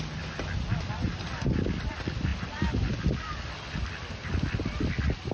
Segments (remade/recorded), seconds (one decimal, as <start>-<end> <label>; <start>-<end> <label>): 0.0-5.3 recorded